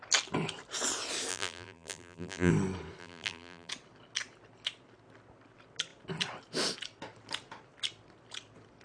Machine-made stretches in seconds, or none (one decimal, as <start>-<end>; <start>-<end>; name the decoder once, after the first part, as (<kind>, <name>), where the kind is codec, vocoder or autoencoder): 1.3-2.5 (vocoder, BigVGAN v2); 3.0-3.7